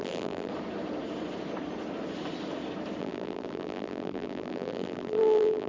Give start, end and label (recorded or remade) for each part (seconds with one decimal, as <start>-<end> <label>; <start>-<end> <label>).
0.0-0.5 remade; 0.5-3.0 recorded; 3.0-5.7 remade